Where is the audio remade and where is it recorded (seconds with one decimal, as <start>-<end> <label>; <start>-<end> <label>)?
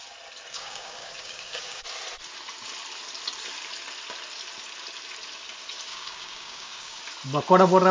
0.0-0.5 recorded; 0.5-1.8 remade; 1.8-5.9 recorded; 5.9-7.0 remade; 7.0-7.9 recorded